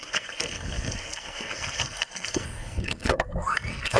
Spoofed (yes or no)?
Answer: yes